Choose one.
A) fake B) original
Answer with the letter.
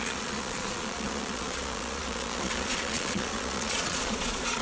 A